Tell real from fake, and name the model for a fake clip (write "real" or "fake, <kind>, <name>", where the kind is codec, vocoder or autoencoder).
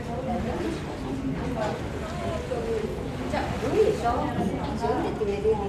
real